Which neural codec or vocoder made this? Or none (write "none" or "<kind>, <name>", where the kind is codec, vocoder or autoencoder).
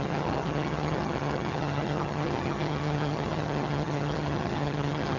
vocoder, HiFi-GAN